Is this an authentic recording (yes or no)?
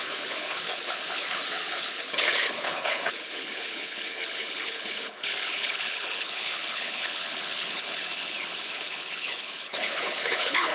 no